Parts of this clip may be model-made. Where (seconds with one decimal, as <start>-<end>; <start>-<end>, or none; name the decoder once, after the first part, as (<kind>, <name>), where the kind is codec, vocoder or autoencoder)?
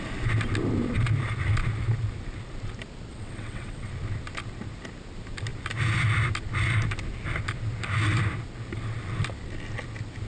3.1-3.9 (vocoder, WaveNeXt)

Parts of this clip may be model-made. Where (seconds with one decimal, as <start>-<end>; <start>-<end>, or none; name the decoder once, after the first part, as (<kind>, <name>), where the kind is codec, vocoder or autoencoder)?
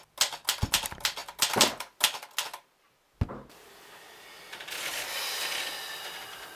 none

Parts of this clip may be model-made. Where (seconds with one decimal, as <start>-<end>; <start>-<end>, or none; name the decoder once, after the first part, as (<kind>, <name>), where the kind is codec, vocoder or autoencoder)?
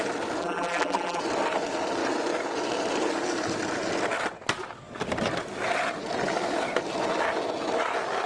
0.4-1.2 (vocoder, BigVGAN v2)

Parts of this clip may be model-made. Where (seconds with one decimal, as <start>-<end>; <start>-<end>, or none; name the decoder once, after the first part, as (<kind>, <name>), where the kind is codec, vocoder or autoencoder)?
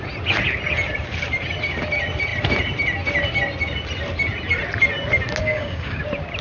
5.4-6.0 (codec, DAC)